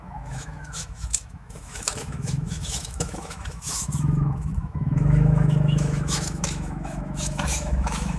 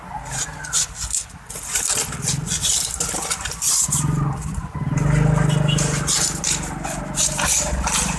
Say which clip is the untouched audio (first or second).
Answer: second